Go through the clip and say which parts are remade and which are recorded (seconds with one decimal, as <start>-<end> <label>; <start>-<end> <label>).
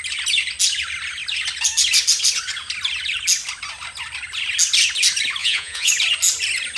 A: 0.0-5.4 recorded; 5.4-5.9 remade; 5.9-6.8 recorded